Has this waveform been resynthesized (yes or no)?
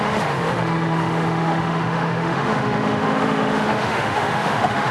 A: yes